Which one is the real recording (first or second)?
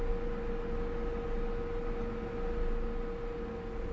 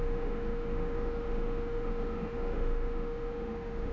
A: first